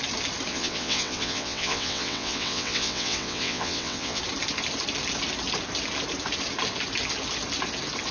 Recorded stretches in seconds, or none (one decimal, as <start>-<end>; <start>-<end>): 0.0-0.5; 4.2-8.1